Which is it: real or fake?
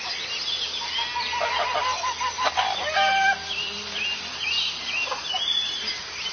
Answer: real